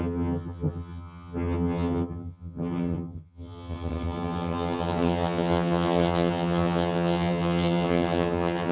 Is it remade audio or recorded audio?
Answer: remade